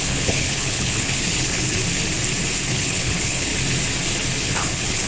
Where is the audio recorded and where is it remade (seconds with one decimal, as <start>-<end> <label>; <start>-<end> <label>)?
0.0-1.8 remade; 1.8-2.7 recorded; 2.7-3.5 remade; 3.5-4.4 recorded; 4.4-5.1 remade